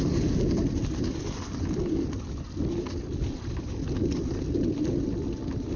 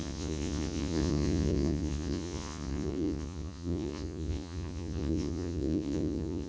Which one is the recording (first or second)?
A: first